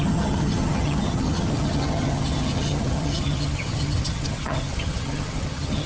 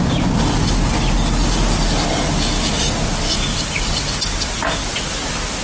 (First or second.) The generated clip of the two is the first